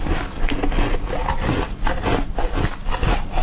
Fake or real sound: real